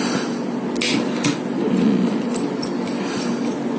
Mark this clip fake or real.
real